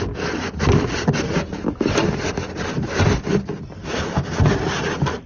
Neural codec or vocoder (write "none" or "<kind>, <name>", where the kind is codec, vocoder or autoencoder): none